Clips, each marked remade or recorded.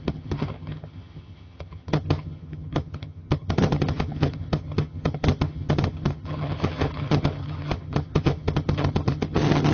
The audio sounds remade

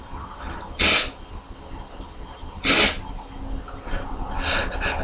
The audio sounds recorded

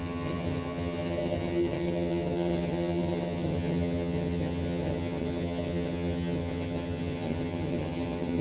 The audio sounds remade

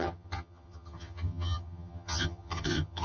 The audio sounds remade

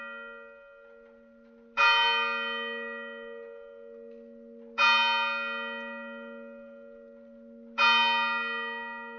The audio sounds recorded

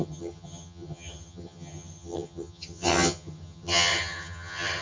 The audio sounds remade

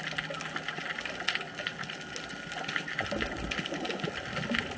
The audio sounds recorded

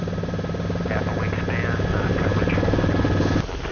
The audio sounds recorded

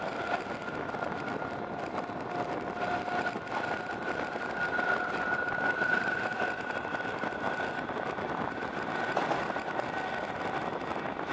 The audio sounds recorded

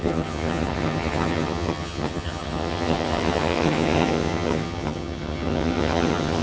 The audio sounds remade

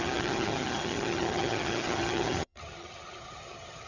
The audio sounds remade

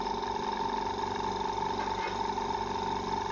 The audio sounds recorded